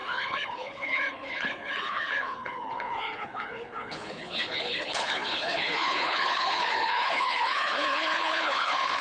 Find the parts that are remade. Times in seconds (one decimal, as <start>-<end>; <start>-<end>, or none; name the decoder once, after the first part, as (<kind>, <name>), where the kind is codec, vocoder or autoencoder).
0.0-9.0 (codec, HILCodec)